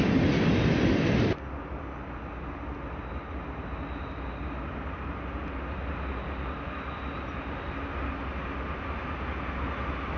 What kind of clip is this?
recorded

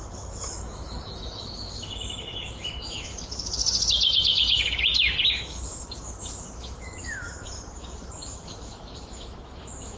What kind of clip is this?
remade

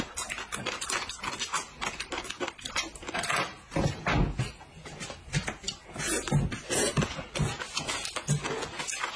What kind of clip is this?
recorded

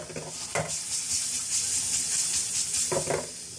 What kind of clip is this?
recorded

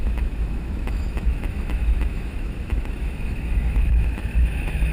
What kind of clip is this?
remade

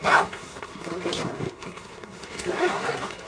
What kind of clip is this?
remade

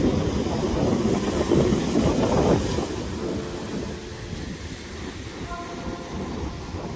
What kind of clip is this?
recorded